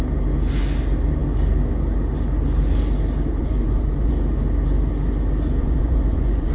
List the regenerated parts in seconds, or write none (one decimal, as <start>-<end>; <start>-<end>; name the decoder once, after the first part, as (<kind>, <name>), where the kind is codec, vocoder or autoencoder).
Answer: 3.4-4.1 (vocoder, Vocos); 5.6-6.5